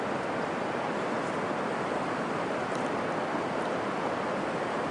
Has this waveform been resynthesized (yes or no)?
no